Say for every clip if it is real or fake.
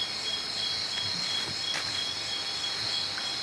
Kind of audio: real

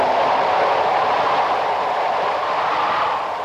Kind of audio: real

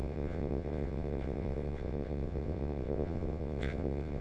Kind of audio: fake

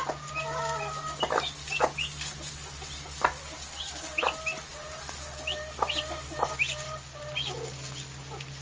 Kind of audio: real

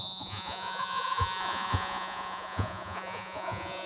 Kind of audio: fake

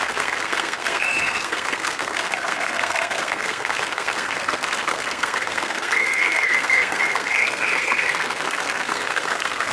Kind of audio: fake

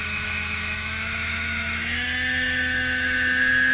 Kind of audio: fake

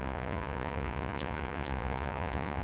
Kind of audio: fake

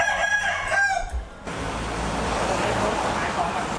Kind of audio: fake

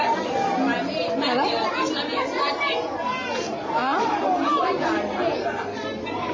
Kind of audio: real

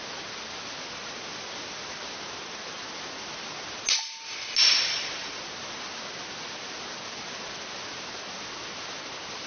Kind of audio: real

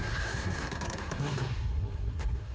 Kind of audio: fake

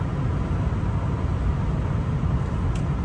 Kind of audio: real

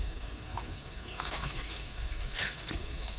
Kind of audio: fake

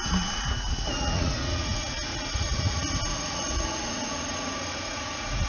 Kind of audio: fake